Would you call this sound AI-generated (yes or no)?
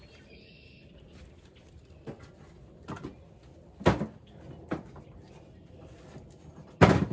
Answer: no